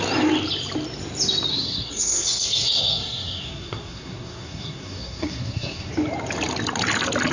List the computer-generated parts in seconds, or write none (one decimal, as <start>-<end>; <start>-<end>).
1.5-5.9